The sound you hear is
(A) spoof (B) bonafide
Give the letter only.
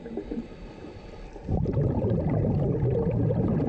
B